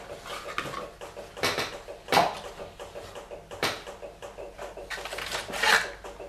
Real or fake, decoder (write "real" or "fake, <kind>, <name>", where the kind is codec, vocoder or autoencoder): real